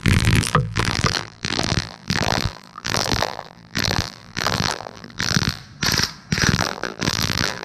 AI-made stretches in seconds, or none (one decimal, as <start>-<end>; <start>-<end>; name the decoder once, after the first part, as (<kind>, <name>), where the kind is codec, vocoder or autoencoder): 0.0-5.6 (vocoder, BigVGAN v2); 6.5-7.6